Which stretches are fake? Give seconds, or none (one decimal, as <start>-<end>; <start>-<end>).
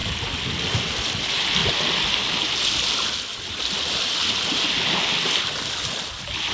none